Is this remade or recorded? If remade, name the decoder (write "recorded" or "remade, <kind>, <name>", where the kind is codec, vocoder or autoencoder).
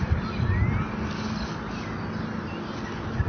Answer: recorded